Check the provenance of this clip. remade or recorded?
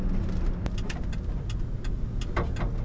recorded